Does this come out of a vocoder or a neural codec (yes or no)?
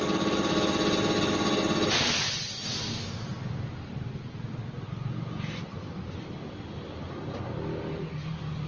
no